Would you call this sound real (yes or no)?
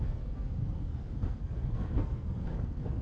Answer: no